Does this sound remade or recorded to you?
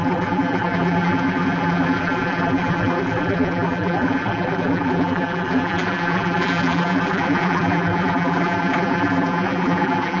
remade